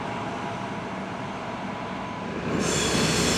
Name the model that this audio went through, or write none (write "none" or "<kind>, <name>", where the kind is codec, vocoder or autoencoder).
none